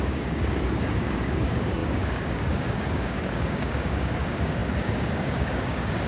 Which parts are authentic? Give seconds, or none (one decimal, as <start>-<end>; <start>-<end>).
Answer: none